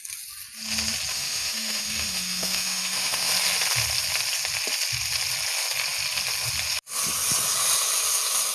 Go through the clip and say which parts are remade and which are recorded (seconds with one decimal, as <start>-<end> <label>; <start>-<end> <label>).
0.0-1.1 recorded; 1.1-3.3 remade; 3.3-8.5 recorded